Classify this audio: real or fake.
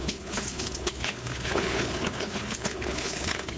fake